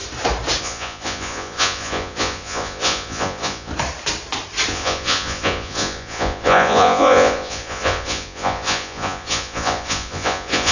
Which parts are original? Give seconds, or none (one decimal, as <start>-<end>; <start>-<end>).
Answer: 0.0-0.6; 3.7-4.7